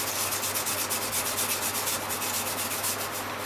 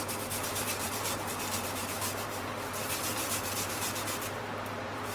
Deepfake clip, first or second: second